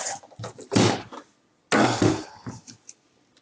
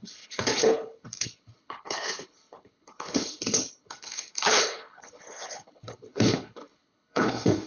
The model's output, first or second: second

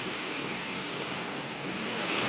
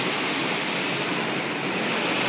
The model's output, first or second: first